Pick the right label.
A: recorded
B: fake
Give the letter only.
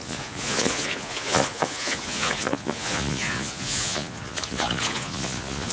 B